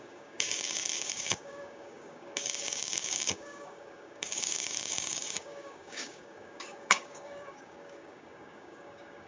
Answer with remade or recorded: remade